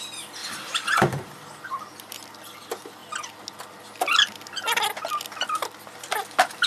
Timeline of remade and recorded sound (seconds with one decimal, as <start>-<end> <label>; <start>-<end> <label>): 0.0-0.4 recorded; 0.4-1.7 remade; 1.7-6.7 recorded

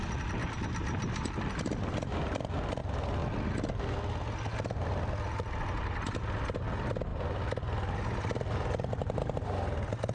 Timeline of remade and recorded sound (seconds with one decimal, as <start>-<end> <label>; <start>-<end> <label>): 0.0-10.1 recorded

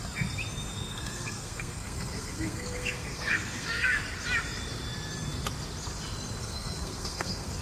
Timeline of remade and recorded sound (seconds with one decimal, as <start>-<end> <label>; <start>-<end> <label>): 0.0-0.7 recorded; 0.7-4.0 remade; 4.0-6.4 recorded; 6.4-7.6 remade

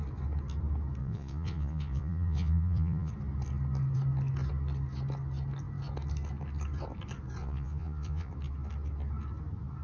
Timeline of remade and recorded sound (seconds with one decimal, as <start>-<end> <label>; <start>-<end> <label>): 0.0-1.0 recorded; 1.0-3.1 remade; 3.1-7.4 recorded; 7.4-8.3 remade; 8.3-9.8 recorded

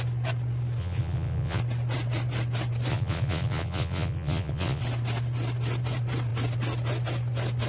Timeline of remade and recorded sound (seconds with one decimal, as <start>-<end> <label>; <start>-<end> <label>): 0.0-0.8 recorded; 0.8-1.6 remade; 1.6-2.9 recorded; 2.9-4.8 remade; 4.8-7.7 recorded

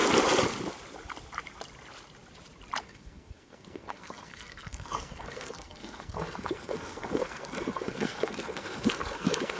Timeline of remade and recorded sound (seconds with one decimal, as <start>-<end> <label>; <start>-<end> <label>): 0.0-2.8 recorded; 2.8-9.6 remade

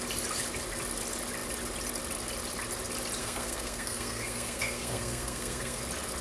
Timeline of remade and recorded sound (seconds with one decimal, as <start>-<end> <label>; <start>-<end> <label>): 0.0-3.2 recorded; 3.2-5.8 remade; 5.8-6.2 recorded

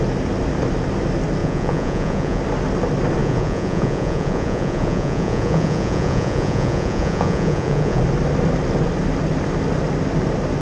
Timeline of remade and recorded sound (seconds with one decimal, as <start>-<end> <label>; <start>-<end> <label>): 0.0-1.4 recorded; 1.4-2.4 remade; 2.4-3.2 recorded; 3.2-8.0 remade; 8.0-10.6 recorded